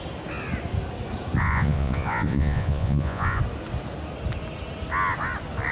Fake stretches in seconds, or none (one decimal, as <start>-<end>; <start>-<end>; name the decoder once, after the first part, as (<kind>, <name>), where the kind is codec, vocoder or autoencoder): 1.4-3.4 (vocoder, Vocos)